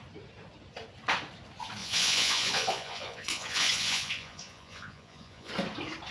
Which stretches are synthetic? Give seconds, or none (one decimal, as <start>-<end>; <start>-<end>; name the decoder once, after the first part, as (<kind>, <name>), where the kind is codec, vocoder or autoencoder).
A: 1.8-5.5 (vocoder, Vocos)